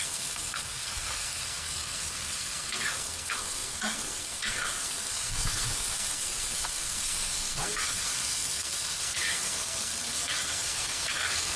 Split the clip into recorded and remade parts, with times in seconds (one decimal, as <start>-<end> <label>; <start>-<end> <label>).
0.0-11.6 remade

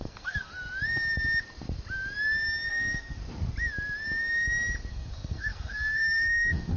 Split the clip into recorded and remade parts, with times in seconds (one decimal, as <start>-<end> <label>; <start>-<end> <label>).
0.0-0.5 remade; 0.5-2.7 recorded; 2.7-3.2 remade; 3.2-4.9 recorded; 4.9-6.8 remade

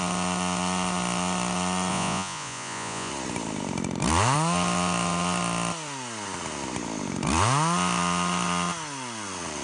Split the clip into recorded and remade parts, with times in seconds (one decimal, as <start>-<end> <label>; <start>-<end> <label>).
0.0-1.9 recorded; 1.9-3.1 remade; 3.1-9.6 recorded

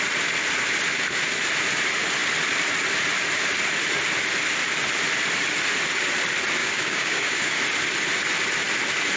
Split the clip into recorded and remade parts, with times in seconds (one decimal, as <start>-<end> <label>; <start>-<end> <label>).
0.0-6.6 recorded; 6.6-7.6 remade; 7.6-9.2 recorded

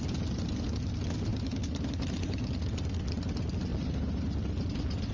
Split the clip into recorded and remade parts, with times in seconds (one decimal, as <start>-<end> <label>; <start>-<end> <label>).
0.0-1.3 recorded; 1.3-3.0 remade; 3.0-3.7 recorded; 3.7-5.1 remade

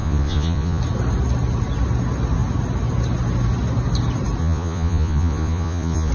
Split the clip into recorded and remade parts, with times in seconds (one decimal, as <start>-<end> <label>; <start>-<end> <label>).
0.0-0.8 remade; 0.8-4.4 recorded; 4.4-6.1 remade

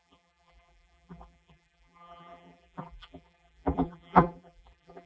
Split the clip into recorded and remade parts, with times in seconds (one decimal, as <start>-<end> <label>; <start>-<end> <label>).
0.0-5.1 remade

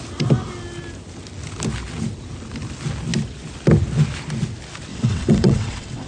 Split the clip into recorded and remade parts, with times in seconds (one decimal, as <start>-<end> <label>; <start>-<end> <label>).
0.0-4.9 recorded; 4.9-6.1 remade